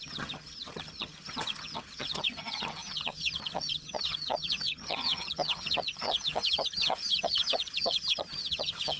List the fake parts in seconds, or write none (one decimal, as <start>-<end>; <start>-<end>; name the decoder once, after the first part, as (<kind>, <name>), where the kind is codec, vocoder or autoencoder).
0.0-9.0 (vocoder, HiFi-GAN)